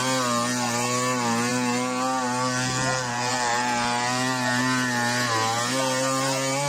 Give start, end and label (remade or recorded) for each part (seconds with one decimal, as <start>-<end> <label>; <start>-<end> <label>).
0.0-6.7 recorded